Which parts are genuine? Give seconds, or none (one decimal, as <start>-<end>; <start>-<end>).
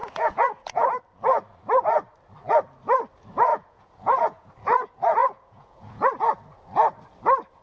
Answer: 1.0-3.5; 4.5-5.2; 6.1-7.6